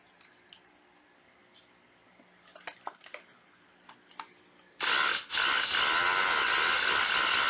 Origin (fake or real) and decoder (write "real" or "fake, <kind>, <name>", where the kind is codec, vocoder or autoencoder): real